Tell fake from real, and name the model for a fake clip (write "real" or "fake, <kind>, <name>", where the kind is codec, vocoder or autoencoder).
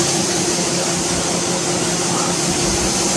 real